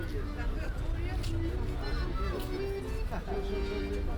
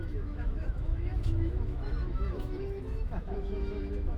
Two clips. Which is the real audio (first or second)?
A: first